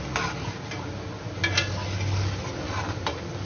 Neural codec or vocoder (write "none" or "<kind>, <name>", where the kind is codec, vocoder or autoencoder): none